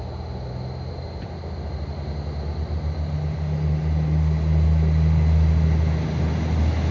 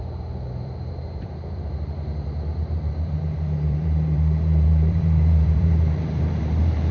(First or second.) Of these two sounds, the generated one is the second